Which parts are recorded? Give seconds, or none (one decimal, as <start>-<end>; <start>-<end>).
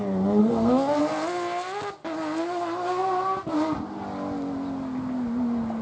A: 0.0-0.4; 1.0-5.8